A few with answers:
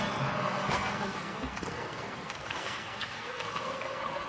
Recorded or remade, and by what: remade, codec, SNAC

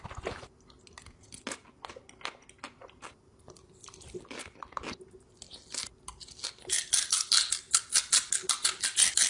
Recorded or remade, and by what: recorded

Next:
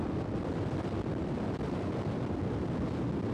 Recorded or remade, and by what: remade, vocoder, BigVGAN v2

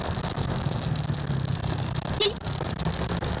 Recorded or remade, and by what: recorded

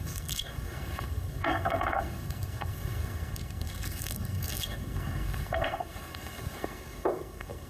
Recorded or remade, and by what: remade, codec, SNAC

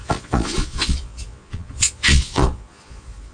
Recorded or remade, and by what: remade, vocoder, Vocos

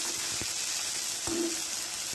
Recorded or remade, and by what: recorded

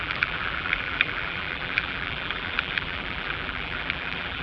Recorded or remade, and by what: remade, vocoder, BigVGAN v2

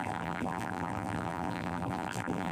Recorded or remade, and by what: remade, vocoder, BigVGAN v2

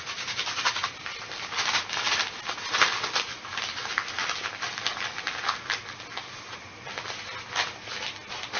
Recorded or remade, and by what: recorded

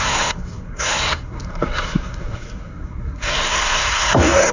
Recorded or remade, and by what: remade, codec, SNAC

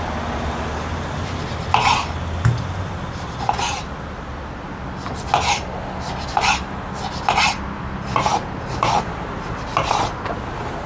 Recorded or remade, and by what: recorded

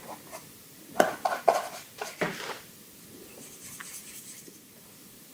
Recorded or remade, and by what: remade, vocoder, BigVGAN v2